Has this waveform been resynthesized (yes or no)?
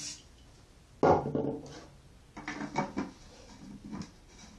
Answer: no